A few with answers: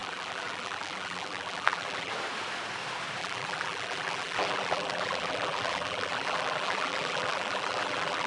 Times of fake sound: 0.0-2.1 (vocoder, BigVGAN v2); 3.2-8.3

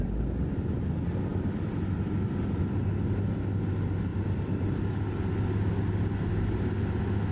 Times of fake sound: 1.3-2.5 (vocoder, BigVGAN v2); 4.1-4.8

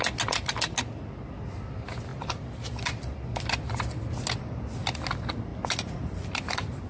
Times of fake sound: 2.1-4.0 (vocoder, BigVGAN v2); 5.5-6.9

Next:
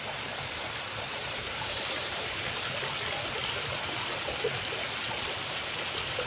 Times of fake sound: 1.1-2.6 (vocoder, BigVGAN v2)